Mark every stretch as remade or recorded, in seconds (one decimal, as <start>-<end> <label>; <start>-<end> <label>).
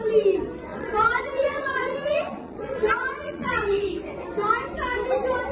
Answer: 0.0-0.7 recorded; 0.7-3.8 remade; 3.8-5.5 recorded